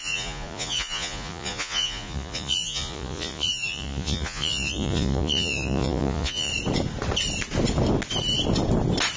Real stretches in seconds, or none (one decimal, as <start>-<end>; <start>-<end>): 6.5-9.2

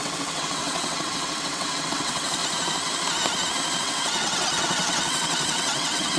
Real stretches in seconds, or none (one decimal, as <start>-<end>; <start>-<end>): 2.4-3.8

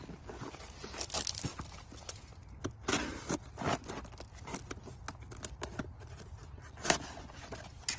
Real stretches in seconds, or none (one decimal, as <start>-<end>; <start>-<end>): 0.0-8.0

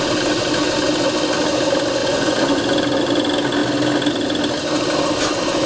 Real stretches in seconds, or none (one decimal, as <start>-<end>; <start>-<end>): 0.0-2.0; 2.6-5.7

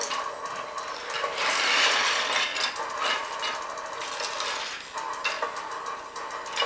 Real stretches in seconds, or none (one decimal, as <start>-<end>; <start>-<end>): 0.0-6.7